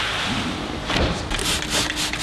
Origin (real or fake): real